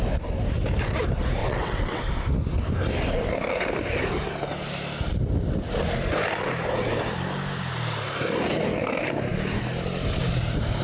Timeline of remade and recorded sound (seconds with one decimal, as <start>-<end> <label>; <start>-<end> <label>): 0.0-1.4 recorded; 1.4-2.1 remade; 2.1-10.8 recorded